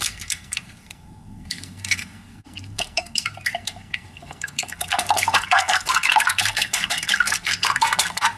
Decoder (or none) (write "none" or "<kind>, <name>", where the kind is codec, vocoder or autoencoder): codec, SNAC